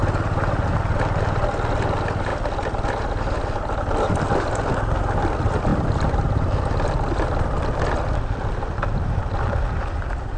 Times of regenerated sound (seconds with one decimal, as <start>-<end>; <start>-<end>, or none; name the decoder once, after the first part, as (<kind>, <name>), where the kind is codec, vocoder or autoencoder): none